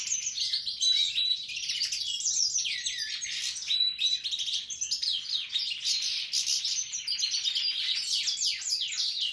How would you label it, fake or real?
real